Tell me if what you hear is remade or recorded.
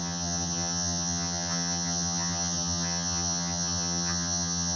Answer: remade